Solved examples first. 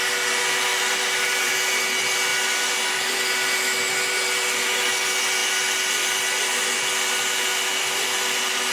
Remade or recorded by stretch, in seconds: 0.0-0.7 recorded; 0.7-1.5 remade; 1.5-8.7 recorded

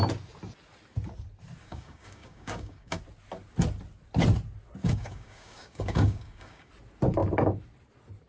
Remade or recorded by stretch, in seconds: 0.0-1.6 recorded; 1.6-3.0 remade; 3.0-4.8 recorded; 4.8-6.7 remade; 6.7-8.3 recorded

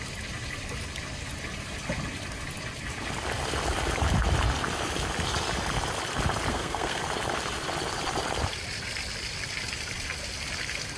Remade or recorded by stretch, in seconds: 0.0-6.5 recorded; 6.5-7.0 remade; 7.0-11.0 recorded

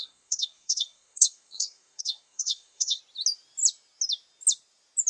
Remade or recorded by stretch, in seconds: 0.0-3.0 remade; 3.0-5.1 recorded

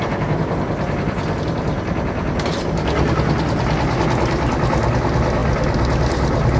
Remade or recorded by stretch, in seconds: 0.0-6.6 recorded

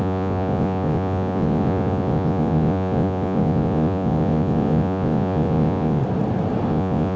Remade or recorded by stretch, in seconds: 0.0-6.0 remade; 6.0-6.7 recorded; 6.7-7.2 remade